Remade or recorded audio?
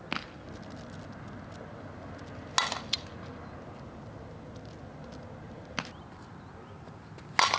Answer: recorded